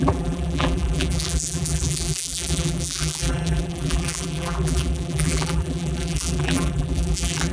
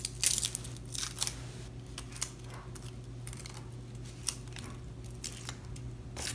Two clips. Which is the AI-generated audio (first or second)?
first